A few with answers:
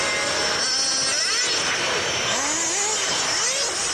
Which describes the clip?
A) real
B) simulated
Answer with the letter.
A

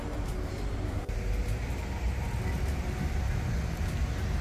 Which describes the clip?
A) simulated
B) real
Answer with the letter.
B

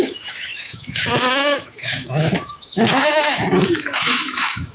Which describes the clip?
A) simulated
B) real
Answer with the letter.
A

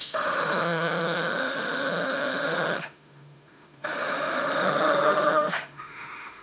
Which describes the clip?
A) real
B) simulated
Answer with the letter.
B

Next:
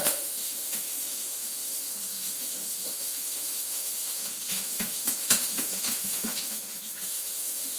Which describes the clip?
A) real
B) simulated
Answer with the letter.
B